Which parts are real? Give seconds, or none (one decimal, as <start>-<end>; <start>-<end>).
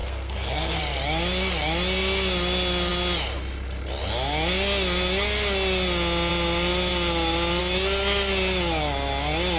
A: 0.8-9.6